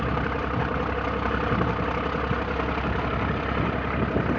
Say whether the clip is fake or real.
real